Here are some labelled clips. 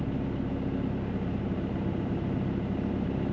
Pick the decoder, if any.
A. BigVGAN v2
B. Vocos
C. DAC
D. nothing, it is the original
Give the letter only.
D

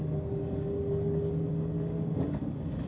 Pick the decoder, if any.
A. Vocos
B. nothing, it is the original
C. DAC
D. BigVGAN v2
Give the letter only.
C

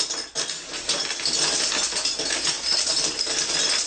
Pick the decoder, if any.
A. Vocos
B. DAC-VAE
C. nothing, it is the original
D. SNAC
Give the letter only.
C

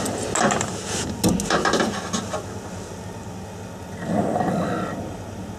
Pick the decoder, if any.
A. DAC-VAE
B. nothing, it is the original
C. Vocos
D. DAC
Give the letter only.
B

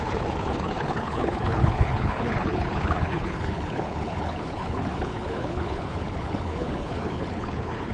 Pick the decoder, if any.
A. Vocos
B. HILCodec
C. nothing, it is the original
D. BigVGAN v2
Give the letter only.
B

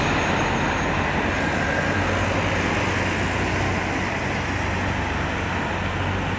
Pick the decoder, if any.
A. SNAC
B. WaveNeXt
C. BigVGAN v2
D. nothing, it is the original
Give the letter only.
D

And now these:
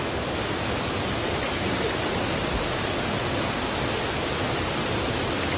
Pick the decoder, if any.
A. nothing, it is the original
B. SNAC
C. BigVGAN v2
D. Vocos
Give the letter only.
A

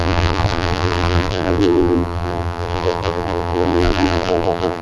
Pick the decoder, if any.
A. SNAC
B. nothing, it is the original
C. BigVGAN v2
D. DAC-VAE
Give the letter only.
C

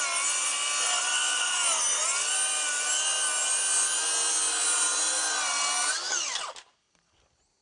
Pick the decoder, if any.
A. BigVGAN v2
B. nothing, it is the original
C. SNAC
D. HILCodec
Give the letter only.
B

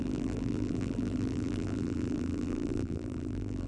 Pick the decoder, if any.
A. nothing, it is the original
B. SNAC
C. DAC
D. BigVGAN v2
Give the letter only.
D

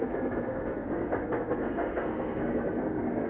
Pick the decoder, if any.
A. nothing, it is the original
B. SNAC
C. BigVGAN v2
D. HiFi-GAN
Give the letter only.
B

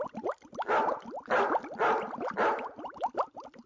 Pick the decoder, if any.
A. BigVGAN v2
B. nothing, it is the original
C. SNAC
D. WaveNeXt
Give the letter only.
B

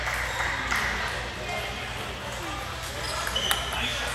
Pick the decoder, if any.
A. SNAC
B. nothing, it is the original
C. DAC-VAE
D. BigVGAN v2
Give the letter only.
B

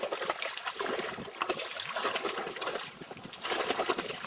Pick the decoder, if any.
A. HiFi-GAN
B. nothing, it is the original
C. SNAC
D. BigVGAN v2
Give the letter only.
B